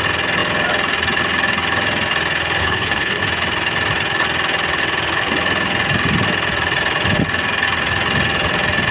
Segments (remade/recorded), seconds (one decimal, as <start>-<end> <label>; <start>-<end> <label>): 0.0-2.6 recorded; 2.6-3.2 remade; 3.2-8.9 recorded